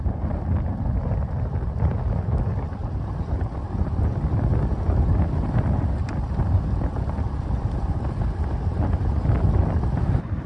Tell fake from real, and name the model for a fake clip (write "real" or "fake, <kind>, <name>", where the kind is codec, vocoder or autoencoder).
fake, vocoder, BigVGAN v2